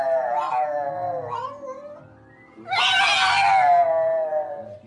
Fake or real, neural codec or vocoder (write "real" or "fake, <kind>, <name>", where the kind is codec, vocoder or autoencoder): real